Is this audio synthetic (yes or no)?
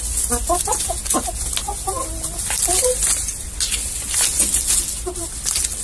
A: no